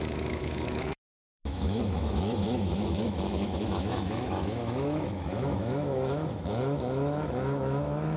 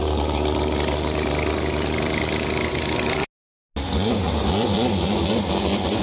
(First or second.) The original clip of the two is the second